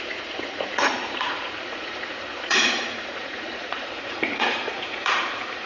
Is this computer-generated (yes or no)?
yes